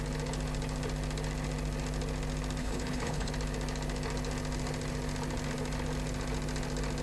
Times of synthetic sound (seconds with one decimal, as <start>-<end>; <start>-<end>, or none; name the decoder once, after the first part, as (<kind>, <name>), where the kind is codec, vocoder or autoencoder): 2.6-3.3 (codec, HILCodec)